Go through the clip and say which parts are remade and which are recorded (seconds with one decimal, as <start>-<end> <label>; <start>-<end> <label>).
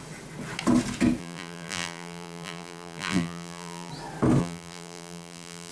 0.0-1.2 recorded; 1.2-3.9 remade; 3.9-4.4 recorded; 4.4-5.7 remade